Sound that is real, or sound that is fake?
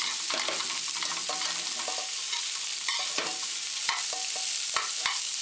real